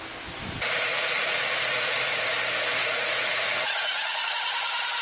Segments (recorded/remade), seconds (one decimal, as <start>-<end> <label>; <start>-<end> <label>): 0.0-0.9 recorded; 0.9-2.2 remade; 2.2-2.8 recorded; 2.8-4.3 remade; 4.3-5.0 recorded

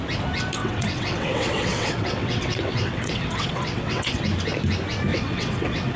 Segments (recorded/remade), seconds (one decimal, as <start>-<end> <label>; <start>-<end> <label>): 0.0-0.6 recorded; 0.6-4.2 remade; 4.2-5.1 recorded; 5.1-6.0 remade

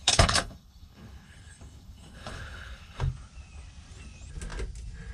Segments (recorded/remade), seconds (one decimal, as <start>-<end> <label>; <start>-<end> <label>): 0.0-3.1 remade; 3.1-5.1 recorded

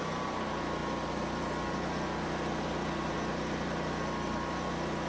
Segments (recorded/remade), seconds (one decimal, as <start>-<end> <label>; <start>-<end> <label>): 0.0-5.1 recorded

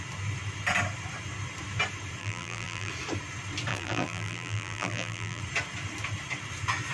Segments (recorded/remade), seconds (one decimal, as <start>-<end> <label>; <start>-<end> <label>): 0.0-2.2 recorded; 2.2-2.9 remade; 2.9-3.7 recorded; 3.7-5.4 remade; 5.4-6.9 recorded

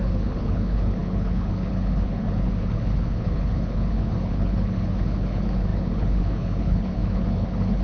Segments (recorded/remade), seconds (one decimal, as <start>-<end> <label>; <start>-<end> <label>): 0.0-7.8 remade

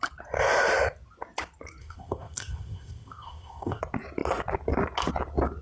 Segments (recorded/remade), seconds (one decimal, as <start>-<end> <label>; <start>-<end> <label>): 0.0-1.8 recorded; 1.8-3.8 remade; 3.8-5.6 recorded

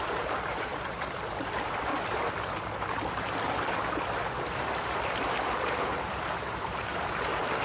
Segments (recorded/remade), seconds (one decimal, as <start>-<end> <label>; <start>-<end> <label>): 0.0-1.9 remade; 1.9-5.2 recorded; 5.2-6.9 remade; 6.9-7.6 recorded